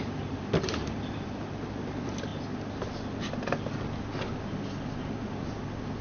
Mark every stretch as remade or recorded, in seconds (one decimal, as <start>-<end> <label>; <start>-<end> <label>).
0.0-6.0 recorded